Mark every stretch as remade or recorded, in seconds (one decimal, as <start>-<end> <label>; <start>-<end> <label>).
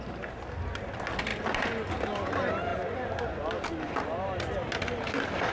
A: 0.0-5.5 recorded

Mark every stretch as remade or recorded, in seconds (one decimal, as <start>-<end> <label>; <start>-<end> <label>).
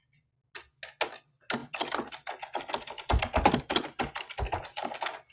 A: 0.0-5.3 recorded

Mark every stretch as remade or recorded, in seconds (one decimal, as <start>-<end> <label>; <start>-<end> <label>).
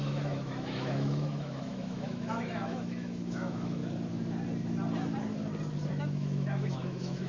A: 0.0-3.8 remade; 3.8-5.9 recorded; 5.9-7.3 remade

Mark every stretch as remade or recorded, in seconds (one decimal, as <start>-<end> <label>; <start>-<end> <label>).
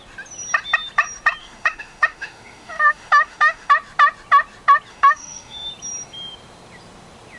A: 0.0-1.4 recorded; 1.4-3.7 remade; 3.7-4.9 recorded; 4.9-5.7 remade; 5.7-7.4 recorded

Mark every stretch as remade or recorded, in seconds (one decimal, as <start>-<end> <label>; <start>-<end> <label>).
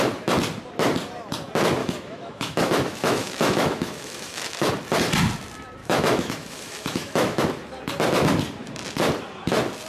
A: 0.0-1.8 recorded; 1.8-4.7 remade; 4.7-5.8 recorded; 5.8-7.4 remade; 7.4-9.9 recorded